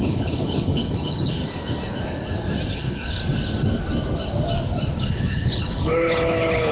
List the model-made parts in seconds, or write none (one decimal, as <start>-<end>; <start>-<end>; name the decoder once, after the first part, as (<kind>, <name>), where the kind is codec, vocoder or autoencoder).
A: 0.0-1.4 (codec, HILCodec); 2.7-3.2; 5.0-6.7